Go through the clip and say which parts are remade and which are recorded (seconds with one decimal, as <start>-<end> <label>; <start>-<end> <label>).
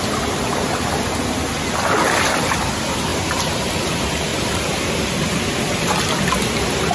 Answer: 0.0-3.1 recorded; 3.1-3.7 remade; 3.7-4.3 recorded; 4.3-5.1 remade; 5.1-6.9 recorded